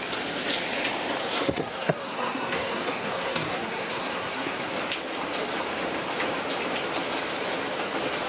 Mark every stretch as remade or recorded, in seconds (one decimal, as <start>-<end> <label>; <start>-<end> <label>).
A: 0.0-1.2 recorded; 1.2-4.7 remade; 4.7-8.3 recorded